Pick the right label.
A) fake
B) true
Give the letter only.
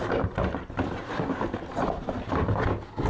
B